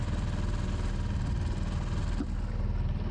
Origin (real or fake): real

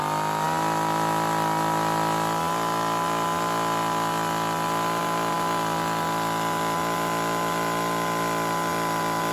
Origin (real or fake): real